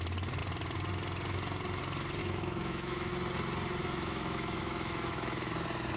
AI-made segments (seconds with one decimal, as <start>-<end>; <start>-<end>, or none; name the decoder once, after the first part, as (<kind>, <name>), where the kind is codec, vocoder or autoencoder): 2.2-3.1 (autoencoder, DAC-VAE); 3.8-5.5